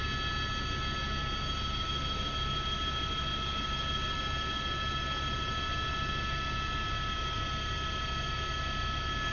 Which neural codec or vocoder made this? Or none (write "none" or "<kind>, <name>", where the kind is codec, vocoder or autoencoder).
none